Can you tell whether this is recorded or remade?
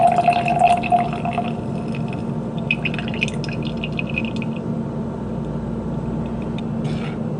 recorded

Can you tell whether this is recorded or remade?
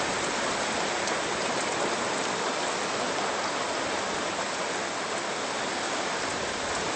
recorded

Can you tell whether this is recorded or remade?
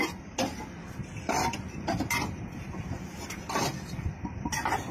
recorded